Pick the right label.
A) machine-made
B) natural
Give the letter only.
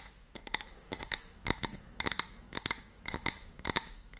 A